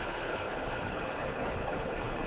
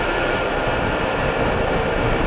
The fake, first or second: first